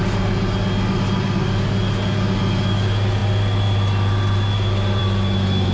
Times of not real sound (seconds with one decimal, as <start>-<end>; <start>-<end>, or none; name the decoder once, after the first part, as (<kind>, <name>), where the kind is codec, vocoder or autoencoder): none